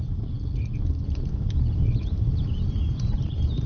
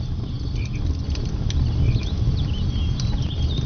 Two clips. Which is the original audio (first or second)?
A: second